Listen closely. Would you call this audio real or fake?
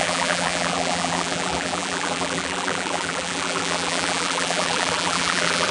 fake